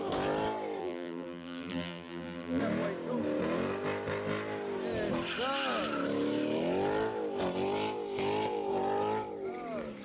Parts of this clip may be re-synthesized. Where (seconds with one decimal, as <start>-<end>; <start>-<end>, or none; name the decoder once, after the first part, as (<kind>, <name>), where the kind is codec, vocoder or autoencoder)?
0.8-2.6 (vocoder, BigVGAN v2)